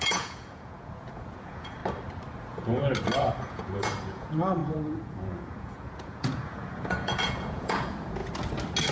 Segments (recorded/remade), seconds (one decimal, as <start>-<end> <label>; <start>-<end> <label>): 0.0-1.8 remade; 1.8-2.4 recorded; 2.4-2.8 remade; 2.8-3.4 recorded; 3.4-8.2 remade; 8.2-8.9 recorded